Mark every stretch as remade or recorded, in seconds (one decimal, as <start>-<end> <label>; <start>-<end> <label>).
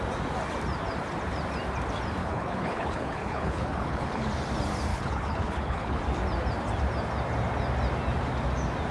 0.0-2.2 recorded; 2.2-4.3 remade; 4.3-4.9 recorded; 4.9-6.0 remade; 6.0-8.9 recorded